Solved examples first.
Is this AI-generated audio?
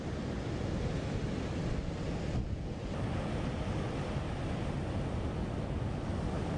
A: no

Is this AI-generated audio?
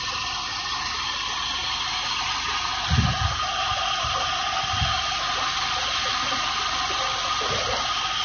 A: no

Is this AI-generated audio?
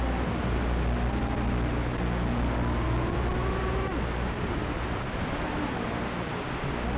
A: no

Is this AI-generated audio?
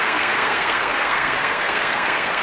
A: yes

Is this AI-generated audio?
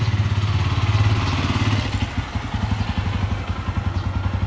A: no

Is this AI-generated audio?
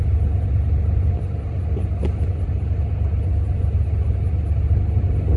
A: no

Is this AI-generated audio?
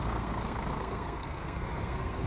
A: yes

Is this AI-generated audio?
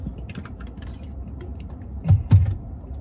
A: no